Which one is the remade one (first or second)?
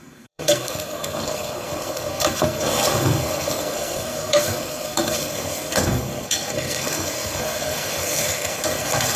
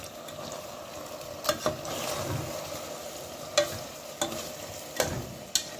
first